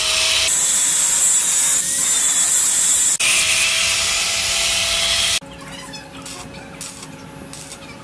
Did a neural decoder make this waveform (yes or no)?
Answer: no